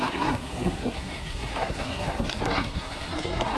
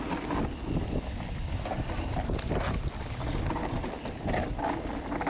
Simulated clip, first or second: first